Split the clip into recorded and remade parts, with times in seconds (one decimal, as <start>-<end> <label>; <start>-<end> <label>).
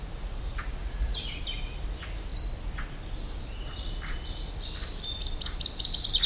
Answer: 0.0-0.8 recorded; 0.8-1.4 remade; 1.4-6.3 recorded